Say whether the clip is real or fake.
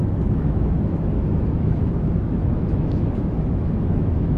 fake